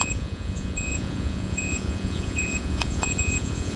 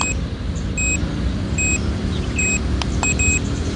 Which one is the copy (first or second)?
first